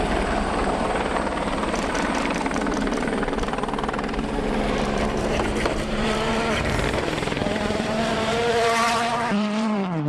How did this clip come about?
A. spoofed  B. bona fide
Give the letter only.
A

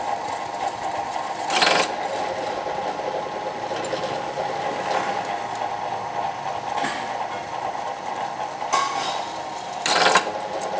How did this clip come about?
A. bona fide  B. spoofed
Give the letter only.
A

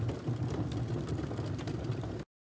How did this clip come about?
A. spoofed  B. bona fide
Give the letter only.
B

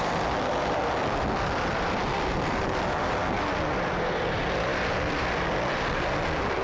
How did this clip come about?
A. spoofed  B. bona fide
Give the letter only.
A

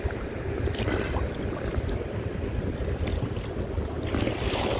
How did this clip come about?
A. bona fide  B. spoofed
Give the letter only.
B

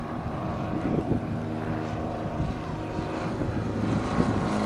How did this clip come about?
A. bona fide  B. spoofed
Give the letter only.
B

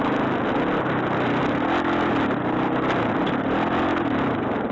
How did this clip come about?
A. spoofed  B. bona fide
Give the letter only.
B